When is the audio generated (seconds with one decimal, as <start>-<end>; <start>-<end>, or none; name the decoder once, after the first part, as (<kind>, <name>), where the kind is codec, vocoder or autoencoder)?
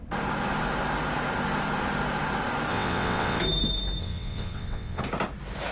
2.7-3.4 (vocoder, WaveNeXt); 4.0-5.0